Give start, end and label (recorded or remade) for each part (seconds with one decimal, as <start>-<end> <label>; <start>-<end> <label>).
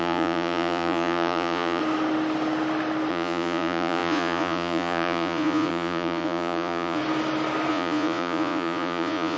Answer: 0.0-1.8 remade; 1.8-3.1 recorded; 3.1-7.0 remade; 7.0-7.7 recorded; 7.7-9.4 remade